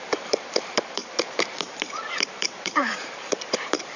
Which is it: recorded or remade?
remade